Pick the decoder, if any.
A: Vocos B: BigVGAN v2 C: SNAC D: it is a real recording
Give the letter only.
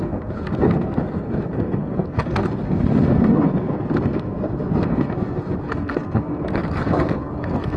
C